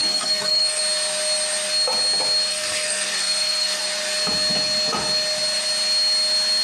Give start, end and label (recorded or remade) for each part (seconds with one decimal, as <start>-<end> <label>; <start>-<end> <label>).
0.0-0.8 remade; 0.8-2.5 recorded; 2.5-3.8 remade; 3.8-6.6 recorded